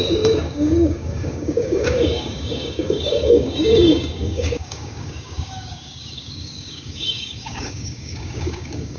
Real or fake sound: fake